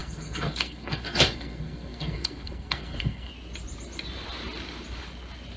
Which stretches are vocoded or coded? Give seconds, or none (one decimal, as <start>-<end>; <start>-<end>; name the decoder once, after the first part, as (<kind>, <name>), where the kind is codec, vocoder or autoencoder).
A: 0.0-3.3 (codec, SNAC)